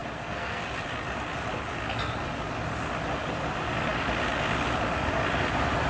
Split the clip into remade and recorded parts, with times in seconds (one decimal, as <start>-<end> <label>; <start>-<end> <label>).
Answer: 0.0-0.6 remade; 0.6-5.9 recorded